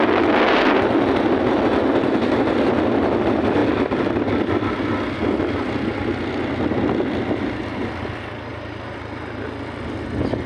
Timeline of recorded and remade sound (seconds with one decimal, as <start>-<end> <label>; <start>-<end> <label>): 0.0-3.6 recorded; 3.6-4.5 remade; 4.5-10.5 recorded